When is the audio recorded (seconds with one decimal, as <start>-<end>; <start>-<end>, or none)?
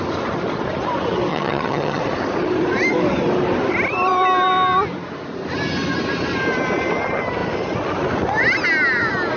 0.0-1.3; 2.0-9.4